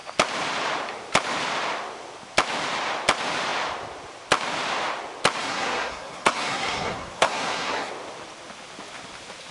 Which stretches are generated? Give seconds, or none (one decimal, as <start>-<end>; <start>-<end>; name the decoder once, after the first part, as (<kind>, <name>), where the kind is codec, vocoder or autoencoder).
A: 5.4-7.9 (codec, SNAC)